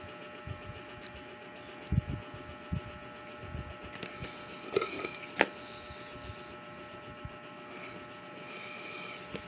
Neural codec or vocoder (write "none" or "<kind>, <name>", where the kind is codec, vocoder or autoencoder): none